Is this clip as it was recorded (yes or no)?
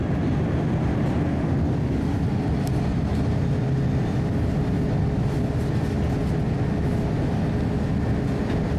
yes